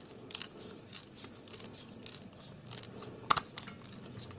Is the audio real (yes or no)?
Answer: yes